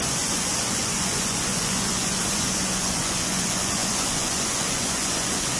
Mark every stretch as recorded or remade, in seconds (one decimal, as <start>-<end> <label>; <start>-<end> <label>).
0.0-5.6 remade